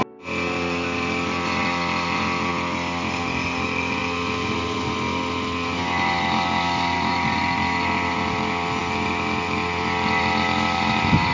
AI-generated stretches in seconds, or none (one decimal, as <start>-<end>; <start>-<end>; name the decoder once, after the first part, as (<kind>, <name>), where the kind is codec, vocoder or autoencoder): none

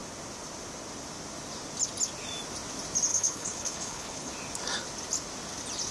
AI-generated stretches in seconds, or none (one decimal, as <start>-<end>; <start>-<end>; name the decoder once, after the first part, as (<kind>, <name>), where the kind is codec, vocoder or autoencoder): 3.1-4.3 (codec, HILCodec)

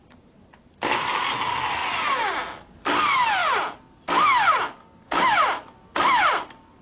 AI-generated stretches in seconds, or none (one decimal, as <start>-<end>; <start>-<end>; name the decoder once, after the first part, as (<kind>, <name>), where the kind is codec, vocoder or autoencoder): none